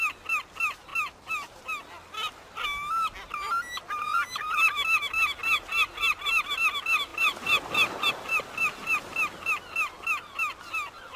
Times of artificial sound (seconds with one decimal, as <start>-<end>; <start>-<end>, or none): none